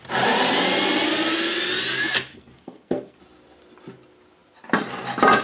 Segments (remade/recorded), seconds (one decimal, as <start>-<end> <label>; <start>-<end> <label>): 0.0-2.3 recorded; 2.3-3.2 remade; 3.2-5.4 recorded